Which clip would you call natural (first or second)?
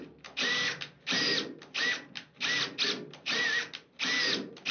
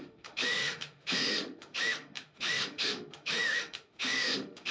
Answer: first